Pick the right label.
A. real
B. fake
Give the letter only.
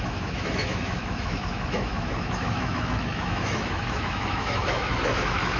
B